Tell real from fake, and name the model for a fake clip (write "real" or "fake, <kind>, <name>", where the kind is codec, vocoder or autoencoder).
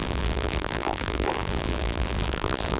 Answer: fake, vocoder, BigVGAN v2